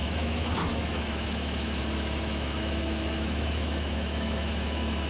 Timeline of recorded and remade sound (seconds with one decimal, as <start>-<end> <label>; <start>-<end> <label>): 0.0-5.1 remade